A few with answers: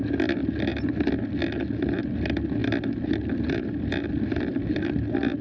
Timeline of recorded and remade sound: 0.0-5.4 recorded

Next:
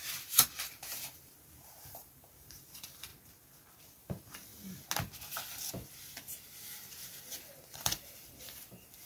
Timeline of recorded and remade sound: 0.0-3.1 remade; 3.1-3.8 recorded; 3.8-4.5 remade; 4.5-5.7 recorded; 5.7-9.1 remade

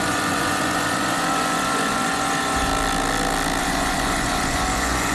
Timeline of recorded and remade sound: 0.0-2.7 remade; 2.7-3.6 recorded; 3.6-5.1 remade

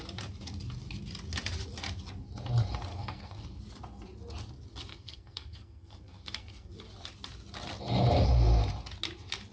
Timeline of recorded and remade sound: 0.0-2.9 recorded; 2.9-3.6 remade; 3.6-4.9 recorded; 4.9-6.7 remade; 6.7-9.5 recorded

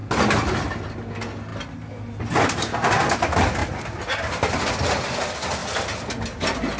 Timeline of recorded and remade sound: 0.0-6.8 recorded